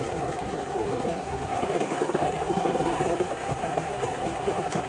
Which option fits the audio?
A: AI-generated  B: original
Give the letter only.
A